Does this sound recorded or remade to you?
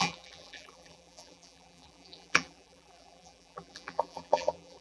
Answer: remade